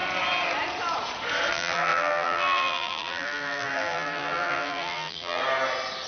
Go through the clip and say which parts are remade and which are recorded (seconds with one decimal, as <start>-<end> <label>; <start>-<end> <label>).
0.0-1.5 recorded; 1.5-5.4 remade; 5.4-6.1 recorded